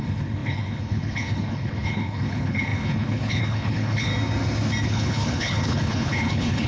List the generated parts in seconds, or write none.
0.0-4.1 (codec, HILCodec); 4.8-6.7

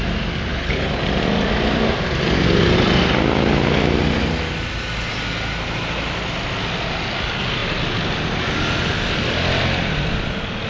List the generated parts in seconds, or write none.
0.5-1.0 (codec, HILCodec)

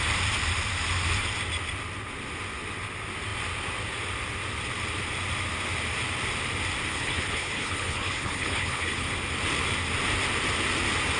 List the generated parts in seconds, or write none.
6.9-9.1 (codec, HILCodec)

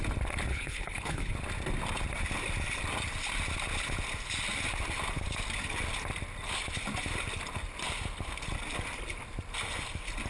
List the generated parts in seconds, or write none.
0.5-1.3 (codec, HILCodec)